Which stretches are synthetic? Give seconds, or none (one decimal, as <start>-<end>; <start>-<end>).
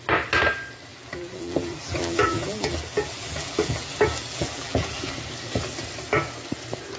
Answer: 0.9-5.1